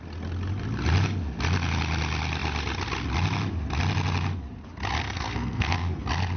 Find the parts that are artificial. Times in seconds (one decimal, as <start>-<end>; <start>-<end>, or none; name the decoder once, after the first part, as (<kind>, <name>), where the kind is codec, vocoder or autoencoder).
5.0-6.0 (codec, SNAC)